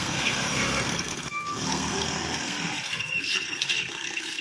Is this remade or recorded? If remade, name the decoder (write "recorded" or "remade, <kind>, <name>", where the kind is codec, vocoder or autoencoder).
remade, codec, SNAC